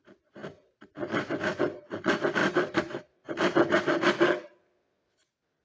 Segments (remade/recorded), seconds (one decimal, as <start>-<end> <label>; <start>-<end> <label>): 0.0-5.6 recorded